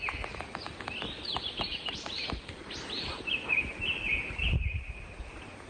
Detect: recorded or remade recorded